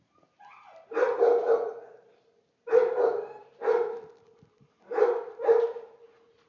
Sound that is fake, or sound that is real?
real